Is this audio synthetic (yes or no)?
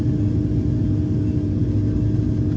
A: no